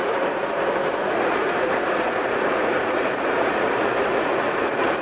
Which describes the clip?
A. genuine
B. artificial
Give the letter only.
B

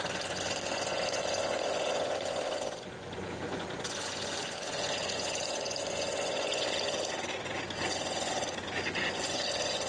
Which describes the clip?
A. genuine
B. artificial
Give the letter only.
B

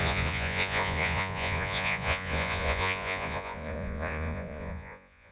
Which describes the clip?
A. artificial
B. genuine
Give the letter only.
A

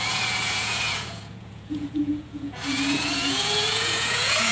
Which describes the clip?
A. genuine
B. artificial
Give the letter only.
B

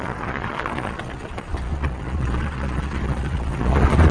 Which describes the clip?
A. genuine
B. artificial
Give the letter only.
B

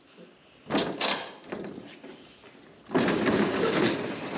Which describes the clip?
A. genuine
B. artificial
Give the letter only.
A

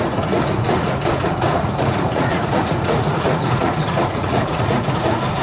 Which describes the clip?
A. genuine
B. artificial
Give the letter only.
B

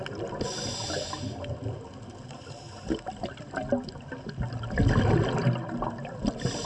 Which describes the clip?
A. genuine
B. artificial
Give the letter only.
A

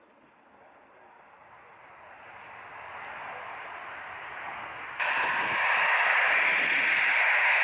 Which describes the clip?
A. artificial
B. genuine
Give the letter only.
B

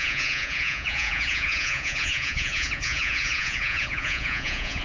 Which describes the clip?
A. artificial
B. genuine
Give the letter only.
A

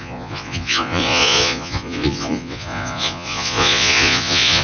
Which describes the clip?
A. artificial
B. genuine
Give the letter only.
A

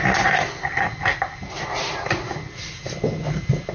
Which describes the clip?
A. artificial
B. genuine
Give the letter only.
B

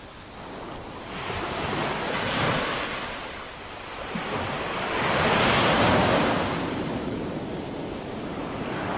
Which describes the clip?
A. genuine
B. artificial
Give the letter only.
A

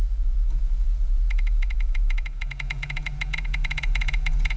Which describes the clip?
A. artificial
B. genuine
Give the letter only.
A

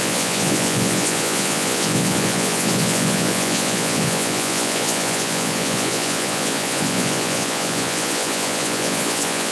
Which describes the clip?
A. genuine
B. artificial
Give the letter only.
B